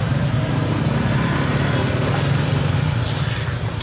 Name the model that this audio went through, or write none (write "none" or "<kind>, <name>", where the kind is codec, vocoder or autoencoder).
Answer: none